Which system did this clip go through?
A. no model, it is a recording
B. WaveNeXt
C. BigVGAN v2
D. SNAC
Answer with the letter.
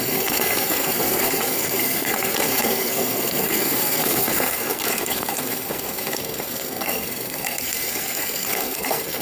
D